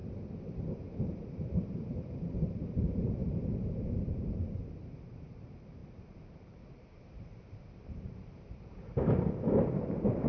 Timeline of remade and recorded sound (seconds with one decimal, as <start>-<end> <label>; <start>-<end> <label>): 0.0-10.3 remade